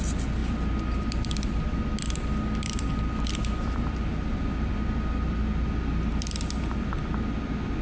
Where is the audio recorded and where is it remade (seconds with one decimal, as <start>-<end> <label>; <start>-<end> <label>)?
0.0-7.8 recorded